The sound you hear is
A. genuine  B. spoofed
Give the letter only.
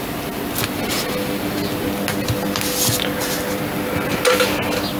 A